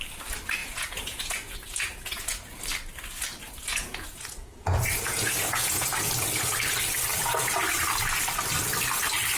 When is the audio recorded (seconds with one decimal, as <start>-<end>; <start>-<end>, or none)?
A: 0.0-0.6; 2.6-3.7; 6.1-7.1; 7.7-9.4